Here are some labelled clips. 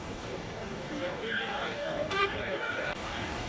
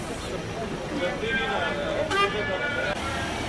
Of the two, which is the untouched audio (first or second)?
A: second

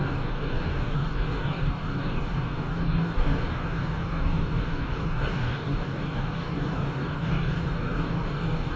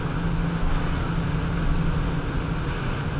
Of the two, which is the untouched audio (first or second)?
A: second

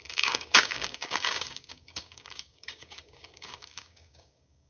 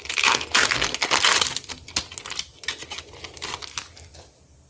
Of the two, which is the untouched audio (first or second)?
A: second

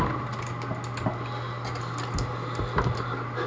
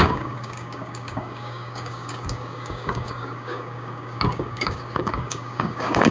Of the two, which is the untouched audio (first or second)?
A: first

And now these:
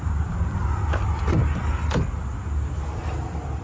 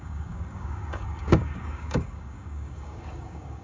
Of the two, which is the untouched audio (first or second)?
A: first